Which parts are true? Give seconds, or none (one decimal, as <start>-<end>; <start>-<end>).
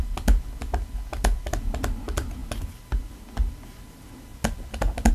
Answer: 0.0-5.1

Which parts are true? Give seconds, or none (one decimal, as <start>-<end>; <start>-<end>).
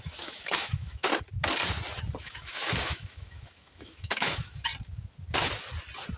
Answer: 1.1-2.2; 4.7-6.2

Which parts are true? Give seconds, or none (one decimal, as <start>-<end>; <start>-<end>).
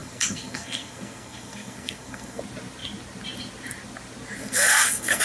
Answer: 2.4-4.4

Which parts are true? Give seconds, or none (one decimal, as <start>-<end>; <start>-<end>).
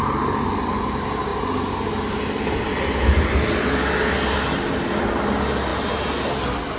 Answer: 0.0-6.8